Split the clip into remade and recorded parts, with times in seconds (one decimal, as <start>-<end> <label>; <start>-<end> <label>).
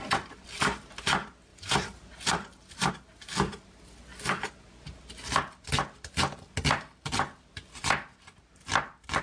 0.0-1.5 recorded; 1.5-2.9 remade; 2.9-9.2 recorded